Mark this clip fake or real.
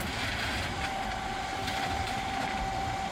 fake